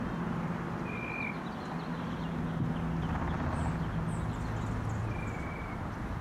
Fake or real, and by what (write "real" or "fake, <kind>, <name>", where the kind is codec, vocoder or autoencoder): real